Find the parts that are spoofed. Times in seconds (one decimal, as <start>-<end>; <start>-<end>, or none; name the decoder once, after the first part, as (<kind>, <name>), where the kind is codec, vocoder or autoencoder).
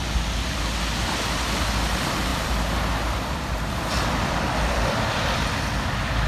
2.3-5.6 (vocoder, BigVGAN v2)